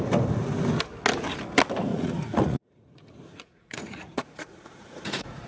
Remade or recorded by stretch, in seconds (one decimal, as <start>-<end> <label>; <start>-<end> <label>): 0.0-1.9 recorded; 1.9-5.5 remade

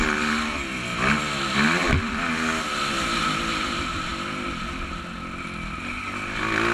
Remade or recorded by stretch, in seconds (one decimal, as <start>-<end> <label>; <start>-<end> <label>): 0.0-6.7 recorded

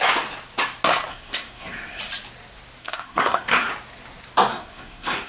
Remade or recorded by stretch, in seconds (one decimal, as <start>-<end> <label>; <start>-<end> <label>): 0.0-1.1 recorded; 1.1-2.0 remade; 2.0-2.8 recorded; 2.8-3.7 remade; 3.7-4.5 recorded; 4.5-5.3 remade

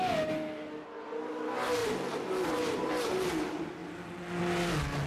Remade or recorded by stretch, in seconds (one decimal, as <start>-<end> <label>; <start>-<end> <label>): 0.0-1.8 recorded; 1.8-3.1 remade; 3.1-5.1 recorded

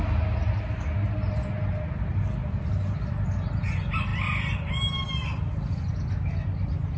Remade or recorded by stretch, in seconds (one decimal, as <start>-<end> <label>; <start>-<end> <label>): 0.0-7.0 recorded